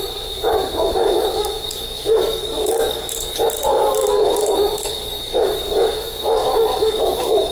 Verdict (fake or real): fake